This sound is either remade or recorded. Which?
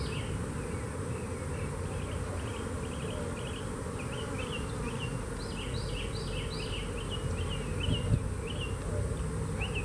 recorded